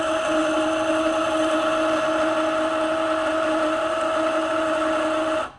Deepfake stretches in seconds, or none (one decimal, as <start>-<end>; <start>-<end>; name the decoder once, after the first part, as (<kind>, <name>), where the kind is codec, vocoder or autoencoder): none